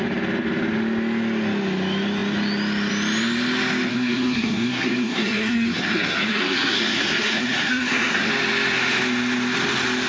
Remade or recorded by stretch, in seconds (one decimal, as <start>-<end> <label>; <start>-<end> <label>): 0.0-3.9 recorded; 3.9-8.3 remade; 8.3-10.1 recorded